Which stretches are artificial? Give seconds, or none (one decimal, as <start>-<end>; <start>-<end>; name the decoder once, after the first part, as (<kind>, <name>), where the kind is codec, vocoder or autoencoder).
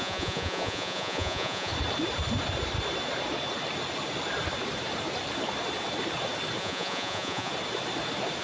0.0-1.7 (vocoder, Vocos); 6.6-7.5